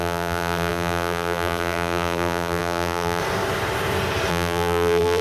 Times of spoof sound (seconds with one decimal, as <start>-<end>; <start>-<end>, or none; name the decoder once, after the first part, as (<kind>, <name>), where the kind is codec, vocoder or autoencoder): 0.0-3.2 (vocoder, BigVGAN v2); 4.3-5.2